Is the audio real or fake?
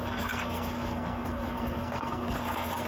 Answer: fake